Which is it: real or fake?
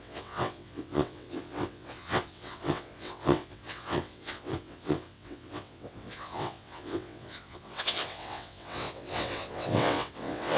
fake